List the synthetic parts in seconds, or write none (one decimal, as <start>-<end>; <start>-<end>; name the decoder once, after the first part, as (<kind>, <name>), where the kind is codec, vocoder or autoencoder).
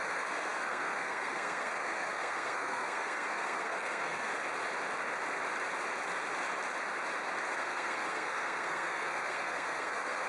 0.0-4.3 (codec, SNAC); 7.6-10.3